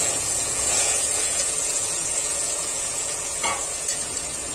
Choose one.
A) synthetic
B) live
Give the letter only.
A